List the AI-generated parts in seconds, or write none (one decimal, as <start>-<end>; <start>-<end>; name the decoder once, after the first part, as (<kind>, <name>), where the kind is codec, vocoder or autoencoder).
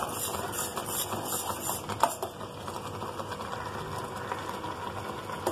none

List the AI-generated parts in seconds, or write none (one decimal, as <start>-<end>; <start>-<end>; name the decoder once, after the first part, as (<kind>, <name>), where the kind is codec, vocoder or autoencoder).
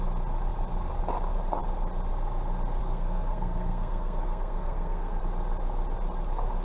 2.8-5.2 (codec, SNAC)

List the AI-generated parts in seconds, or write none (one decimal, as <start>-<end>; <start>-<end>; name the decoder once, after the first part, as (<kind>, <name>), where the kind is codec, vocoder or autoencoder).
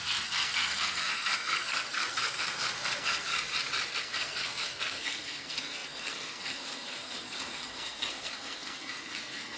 0.0-3.3 (codec, SNAC); 4.0-9.6